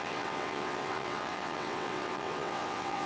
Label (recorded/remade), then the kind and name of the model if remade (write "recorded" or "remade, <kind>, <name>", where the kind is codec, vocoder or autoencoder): remade, vocoder, WaveNeXt